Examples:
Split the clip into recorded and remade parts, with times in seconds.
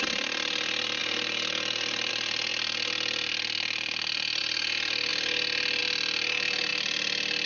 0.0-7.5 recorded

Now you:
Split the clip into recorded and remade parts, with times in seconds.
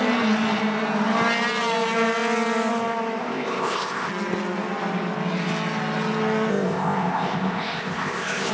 0.0-3.2 recorded; 3.2-4.1 remade; 4.1-6.5 recorded; 6.5-8.5 remade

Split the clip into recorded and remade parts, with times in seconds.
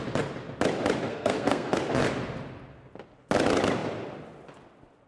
0.0-1.1 recorded; 1.1-1.8 remade; 1.8-5.1 recorded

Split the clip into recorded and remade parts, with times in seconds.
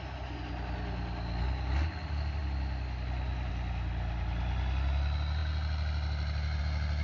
0.0-7.0 recorded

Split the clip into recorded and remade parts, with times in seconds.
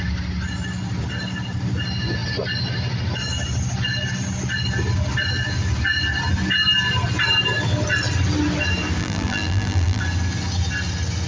0.0-9.0 recorded; 9.0-10.0 remade; 10.0-11.3 recorded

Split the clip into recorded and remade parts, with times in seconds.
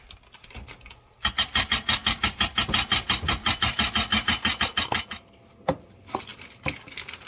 0.0-7.3 recorded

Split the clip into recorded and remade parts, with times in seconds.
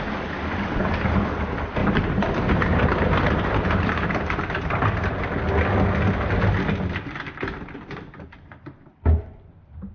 0.0-1.8 recorded; 1.8-5.2 remade; 5.2-8.9 recorded; 8.9-9.9 remade